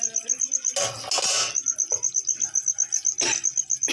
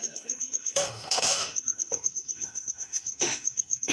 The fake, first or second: second